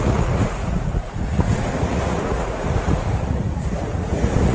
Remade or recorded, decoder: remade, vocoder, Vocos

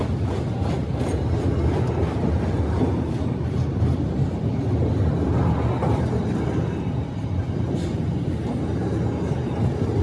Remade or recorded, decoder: recorded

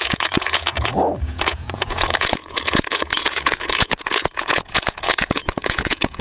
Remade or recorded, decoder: remade, vocoder, Vocos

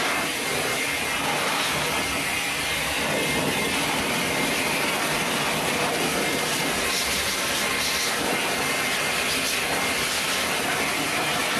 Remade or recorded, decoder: recorded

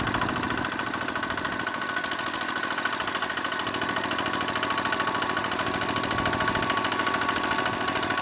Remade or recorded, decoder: recorded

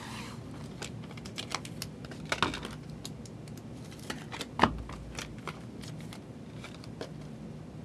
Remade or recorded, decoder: recorded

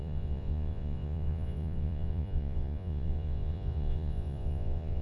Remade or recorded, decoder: remade, vocoder, Vocos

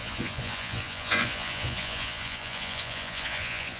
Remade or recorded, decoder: remade, vocoder, Vocos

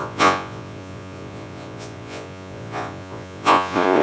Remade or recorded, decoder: remade, vocoder, Vocos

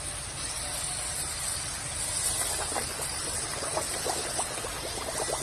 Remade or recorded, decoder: recorded